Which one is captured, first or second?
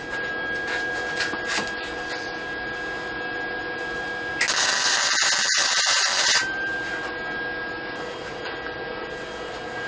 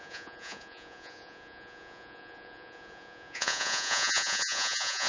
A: first